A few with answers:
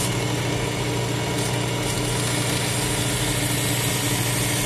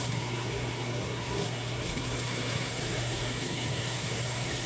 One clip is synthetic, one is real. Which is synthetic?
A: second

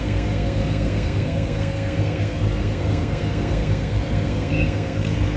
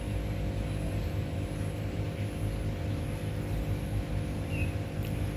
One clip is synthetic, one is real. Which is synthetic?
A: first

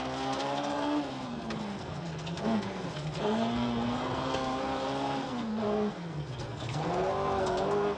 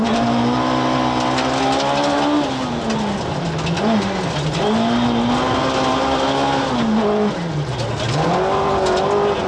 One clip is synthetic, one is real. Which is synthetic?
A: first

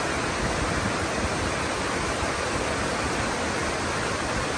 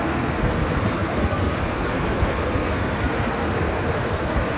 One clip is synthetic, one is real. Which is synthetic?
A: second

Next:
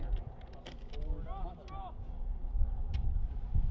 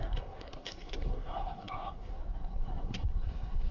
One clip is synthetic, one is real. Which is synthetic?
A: second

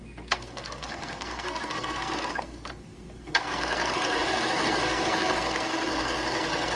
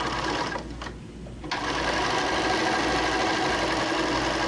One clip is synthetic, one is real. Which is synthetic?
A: first